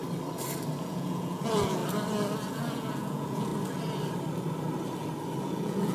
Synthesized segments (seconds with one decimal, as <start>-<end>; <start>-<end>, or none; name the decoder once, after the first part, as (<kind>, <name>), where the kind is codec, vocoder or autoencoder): 0.8-1.8 (vocoder, Vocos); 2.5-3.5; 5.4-5.9